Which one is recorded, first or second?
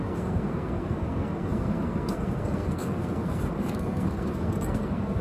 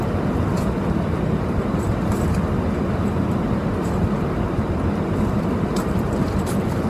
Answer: second